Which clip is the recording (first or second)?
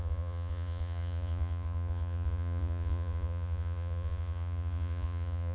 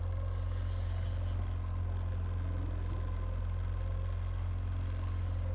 second